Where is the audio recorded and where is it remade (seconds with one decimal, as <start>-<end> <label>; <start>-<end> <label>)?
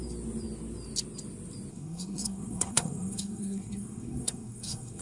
0.0-1.7 recorded; 1.7-5.0 remade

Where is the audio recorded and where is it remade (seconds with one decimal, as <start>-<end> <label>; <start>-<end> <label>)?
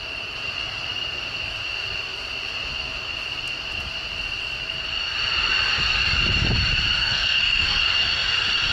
0.0-7.0 recorded; 7.0-7.8 remade; 7.8-8.7 recorded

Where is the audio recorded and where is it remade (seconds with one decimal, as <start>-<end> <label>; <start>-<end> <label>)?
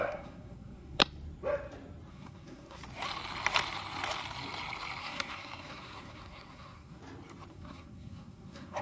0.0-1.0 remade; 1.0-2.1 recorded; 2.1-2.8 remade; 2.8-5.0 recorded; 5.0-7.0 remade; 7.0-7.5 recorded; 7.5-8.8 remade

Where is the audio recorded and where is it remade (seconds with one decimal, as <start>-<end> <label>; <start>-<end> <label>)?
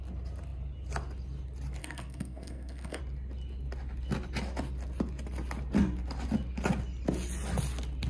0.0-1.8 recorded; 1.8-3.0 remade; 3.0-8.1 recorded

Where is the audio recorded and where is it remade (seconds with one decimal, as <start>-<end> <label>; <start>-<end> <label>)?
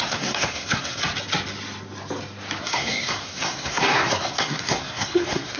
0.0-1.0 remade; 1.0-2.6 recorded; 2.6-5.6 remade